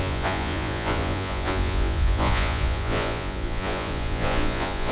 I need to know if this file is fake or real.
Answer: fake